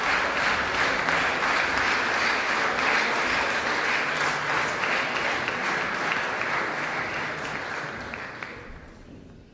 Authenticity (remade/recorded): recorded